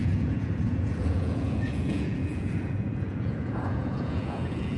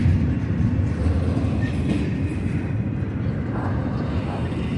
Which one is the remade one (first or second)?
first